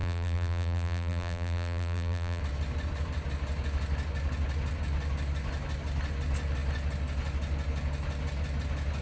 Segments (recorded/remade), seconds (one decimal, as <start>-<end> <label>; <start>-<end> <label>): 0.0-2.4 remade; 2.4-9.0 recorded